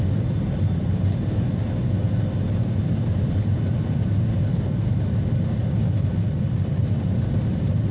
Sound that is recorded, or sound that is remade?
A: recorded